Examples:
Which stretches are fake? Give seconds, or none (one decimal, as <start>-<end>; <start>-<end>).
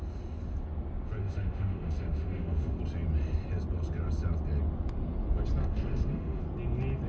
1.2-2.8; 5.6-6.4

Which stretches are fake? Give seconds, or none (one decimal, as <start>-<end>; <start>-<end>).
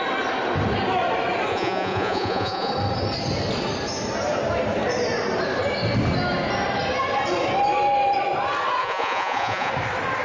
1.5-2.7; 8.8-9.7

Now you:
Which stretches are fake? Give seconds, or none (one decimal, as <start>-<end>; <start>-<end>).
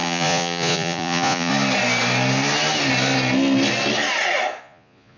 0.0-1.5; 4.6-5.2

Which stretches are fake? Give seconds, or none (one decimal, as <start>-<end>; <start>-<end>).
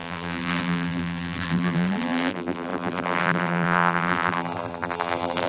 0.0-5.5